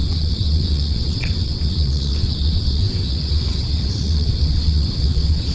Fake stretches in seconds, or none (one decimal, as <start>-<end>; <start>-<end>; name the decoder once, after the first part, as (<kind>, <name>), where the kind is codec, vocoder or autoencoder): 0.0-5.5 (vocoder, WaveNeXt)